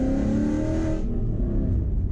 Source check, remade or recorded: recorded